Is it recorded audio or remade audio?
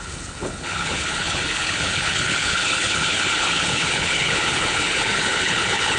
remade